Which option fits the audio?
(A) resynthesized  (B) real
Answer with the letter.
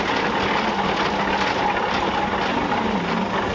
B